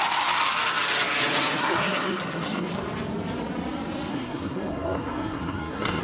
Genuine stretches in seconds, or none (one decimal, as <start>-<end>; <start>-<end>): 0.0-1.6; 2.7-4.1